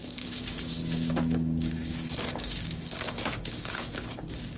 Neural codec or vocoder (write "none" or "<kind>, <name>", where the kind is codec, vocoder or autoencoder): codec, DAC